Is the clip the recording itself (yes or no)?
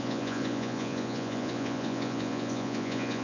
no